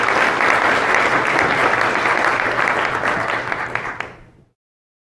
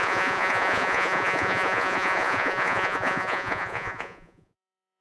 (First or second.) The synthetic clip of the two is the second